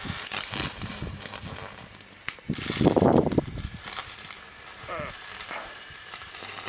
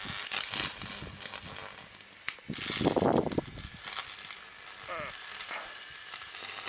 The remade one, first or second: first